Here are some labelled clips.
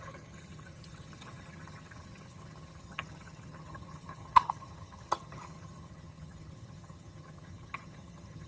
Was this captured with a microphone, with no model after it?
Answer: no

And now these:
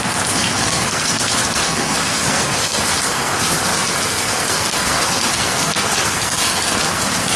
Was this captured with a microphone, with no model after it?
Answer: no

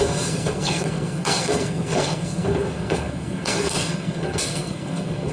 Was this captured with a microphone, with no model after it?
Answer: no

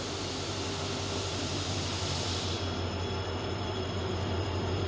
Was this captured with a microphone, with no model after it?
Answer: yes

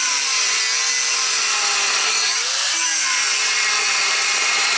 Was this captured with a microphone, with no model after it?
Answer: yes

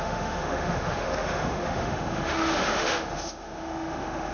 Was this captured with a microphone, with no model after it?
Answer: no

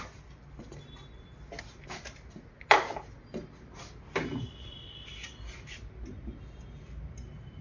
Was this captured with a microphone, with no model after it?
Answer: yes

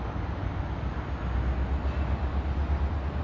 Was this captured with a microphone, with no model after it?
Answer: yes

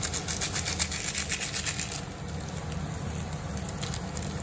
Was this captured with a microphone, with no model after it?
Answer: yes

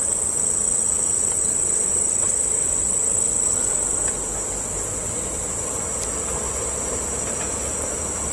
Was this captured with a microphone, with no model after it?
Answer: yes